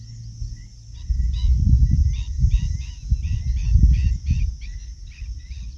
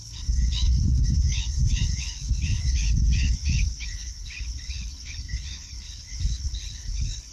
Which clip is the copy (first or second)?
second